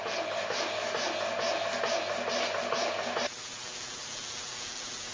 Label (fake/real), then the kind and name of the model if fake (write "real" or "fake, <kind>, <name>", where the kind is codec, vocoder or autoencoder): real